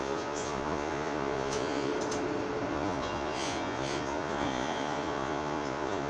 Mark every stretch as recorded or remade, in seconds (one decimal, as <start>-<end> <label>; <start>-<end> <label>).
0.0-1.9 remade; 1.9-2.7 recorded; 2.7-6.1 remade